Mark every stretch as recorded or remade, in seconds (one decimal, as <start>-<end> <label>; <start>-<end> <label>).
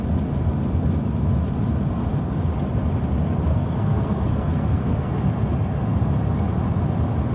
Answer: 0.0-3.5 recorded; 3.5-5.1 remade; 5.1-7.3 recorded